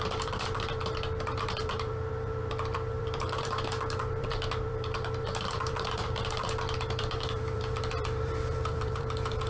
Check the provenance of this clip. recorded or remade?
remade